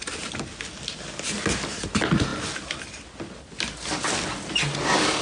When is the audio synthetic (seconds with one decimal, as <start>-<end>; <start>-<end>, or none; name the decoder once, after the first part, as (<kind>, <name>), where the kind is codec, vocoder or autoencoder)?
none